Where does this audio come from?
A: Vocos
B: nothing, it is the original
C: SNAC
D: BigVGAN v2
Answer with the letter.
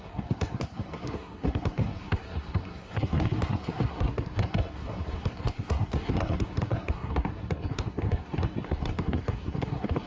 C